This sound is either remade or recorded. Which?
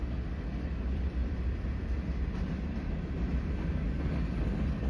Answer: recorded